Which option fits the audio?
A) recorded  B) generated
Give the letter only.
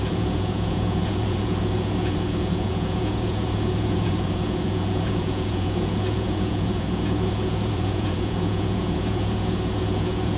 B